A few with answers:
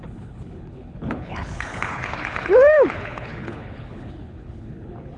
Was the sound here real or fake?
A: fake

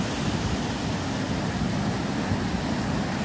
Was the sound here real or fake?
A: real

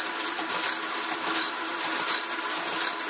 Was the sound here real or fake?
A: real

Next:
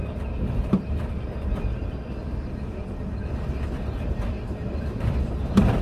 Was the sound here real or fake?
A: real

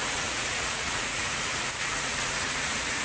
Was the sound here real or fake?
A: fake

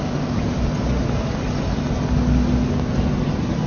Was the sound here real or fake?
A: real